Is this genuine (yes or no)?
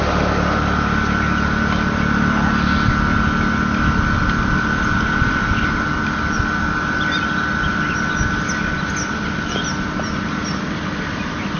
yes